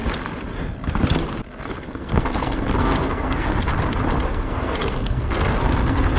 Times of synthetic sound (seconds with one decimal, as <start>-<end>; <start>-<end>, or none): 1.7-3.7; 4.3-6.2